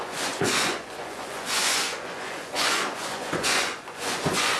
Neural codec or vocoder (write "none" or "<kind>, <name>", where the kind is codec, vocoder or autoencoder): vocoder, Vocos